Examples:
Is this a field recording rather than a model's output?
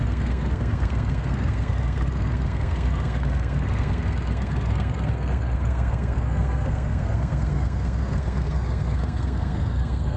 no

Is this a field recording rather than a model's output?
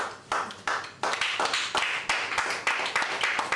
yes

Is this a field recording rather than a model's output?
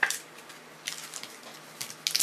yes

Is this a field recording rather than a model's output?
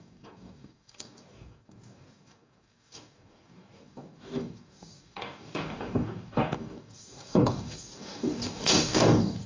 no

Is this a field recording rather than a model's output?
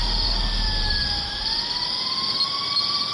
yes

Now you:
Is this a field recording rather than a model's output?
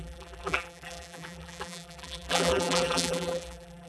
no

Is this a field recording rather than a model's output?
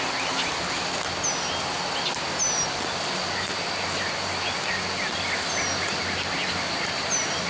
yes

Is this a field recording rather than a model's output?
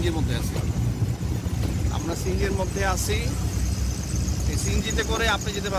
yes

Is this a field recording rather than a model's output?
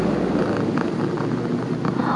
yes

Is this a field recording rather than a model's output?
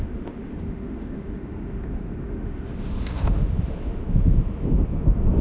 no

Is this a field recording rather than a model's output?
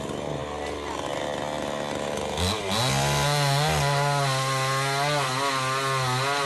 yes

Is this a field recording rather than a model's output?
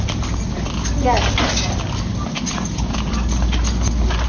yes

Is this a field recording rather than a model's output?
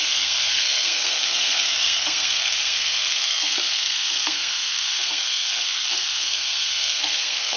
no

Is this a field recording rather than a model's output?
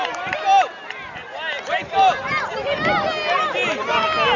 yes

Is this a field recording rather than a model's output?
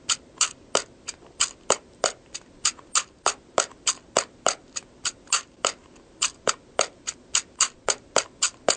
yes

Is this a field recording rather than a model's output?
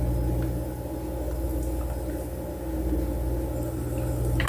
yes